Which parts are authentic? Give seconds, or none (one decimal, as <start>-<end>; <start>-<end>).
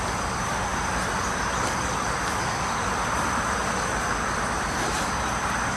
0.0-5.8